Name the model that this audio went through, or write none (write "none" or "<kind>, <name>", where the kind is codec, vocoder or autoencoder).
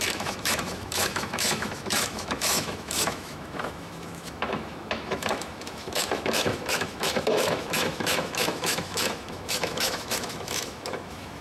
autoencoder, DAC-VAE